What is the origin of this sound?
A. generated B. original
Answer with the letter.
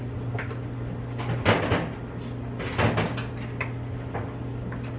B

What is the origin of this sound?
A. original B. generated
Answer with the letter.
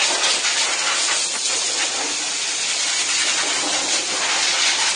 A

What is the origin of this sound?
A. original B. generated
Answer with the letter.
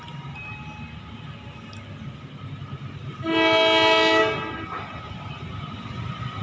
A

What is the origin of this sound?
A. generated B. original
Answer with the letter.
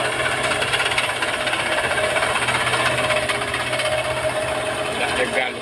B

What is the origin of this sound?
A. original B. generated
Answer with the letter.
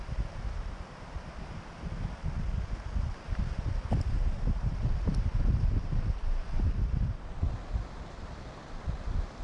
A